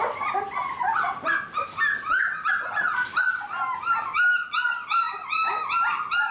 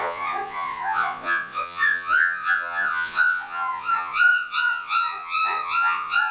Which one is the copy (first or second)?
second